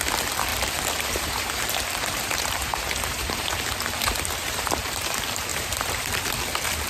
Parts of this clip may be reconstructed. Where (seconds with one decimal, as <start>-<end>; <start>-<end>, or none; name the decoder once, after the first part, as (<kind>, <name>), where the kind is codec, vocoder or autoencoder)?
0.5-3.6 (vocoder, BigVGAN v2); 4.4-5.1; 5.5-6.1